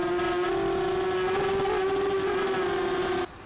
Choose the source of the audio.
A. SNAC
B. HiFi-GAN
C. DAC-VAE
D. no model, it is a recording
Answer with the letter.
D